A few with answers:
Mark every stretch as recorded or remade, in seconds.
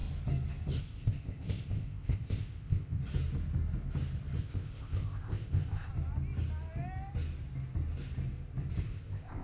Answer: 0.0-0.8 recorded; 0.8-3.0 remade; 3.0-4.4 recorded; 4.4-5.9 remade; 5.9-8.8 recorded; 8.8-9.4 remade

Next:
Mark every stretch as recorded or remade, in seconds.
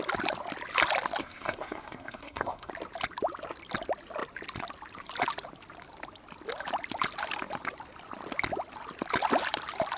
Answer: 0.0-1.2 recorded; 1.2-2.7 remade; 2.7-10.0 recorded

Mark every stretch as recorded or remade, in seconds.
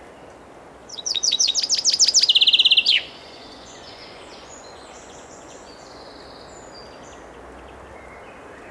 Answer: 0.0-0.8 recorded; 0.8-1.5 remade; 1.5-2.9 recorded; 2.9-6.1 remade; 6.1-8.7 recorded